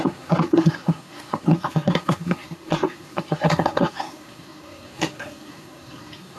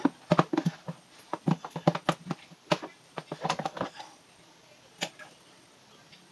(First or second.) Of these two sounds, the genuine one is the second